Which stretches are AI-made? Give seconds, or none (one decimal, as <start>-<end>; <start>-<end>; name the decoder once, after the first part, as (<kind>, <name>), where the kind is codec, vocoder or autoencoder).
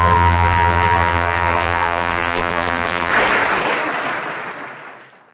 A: 0.0-3.1 (vocoder, BigVGAN v2)